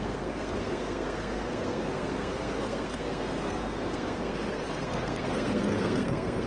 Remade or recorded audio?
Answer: remade